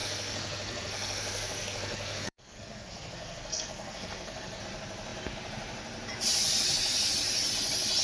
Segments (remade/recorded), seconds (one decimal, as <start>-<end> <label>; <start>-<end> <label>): 0.0-4.6 remade; 4.6-8.0 recorded